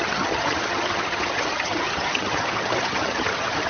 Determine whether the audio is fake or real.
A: fake